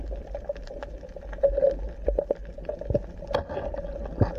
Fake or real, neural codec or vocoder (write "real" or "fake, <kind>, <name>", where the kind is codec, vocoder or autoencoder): real